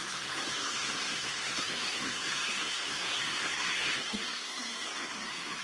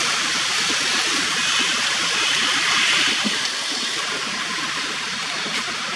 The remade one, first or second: first